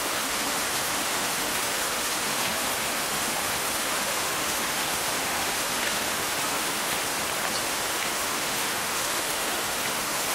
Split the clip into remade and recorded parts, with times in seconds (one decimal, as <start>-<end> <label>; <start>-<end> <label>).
0.0-7.1 remade; 7.1-7.6 recorded; 7.6-10.3 remade